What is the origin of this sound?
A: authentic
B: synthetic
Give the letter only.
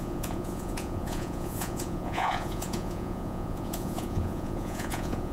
B